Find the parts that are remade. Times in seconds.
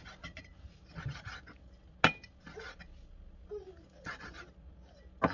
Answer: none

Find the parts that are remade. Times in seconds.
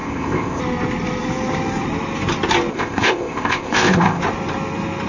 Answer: 0.0-0.6 (codec, ZipCodec); 2.7-4.2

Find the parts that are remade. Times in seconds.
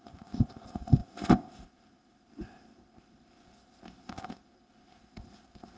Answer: 0.0-5.8 (codec, ZipCodec)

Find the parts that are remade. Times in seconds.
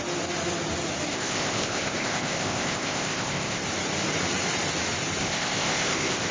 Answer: 1.1-3.6 (codec, ZipCodec); 5.2-6.3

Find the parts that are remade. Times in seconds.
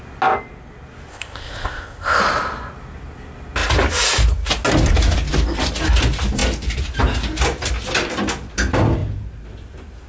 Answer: 1.1-2.2 (codec, ZipCodec)